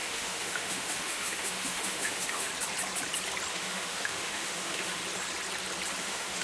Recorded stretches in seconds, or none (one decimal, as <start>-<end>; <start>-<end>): 2.5-3.5; 5.0-6.0